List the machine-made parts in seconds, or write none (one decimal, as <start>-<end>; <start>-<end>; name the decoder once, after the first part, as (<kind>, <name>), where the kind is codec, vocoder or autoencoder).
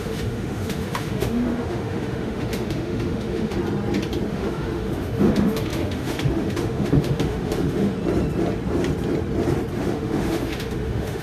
0.0-3.6 (autoencoder, DAC-VAE); 4.3-7.9; 9.8-11.2